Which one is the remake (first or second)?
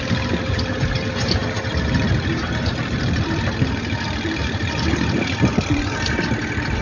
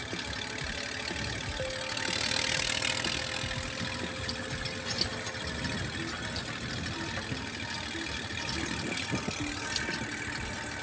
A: first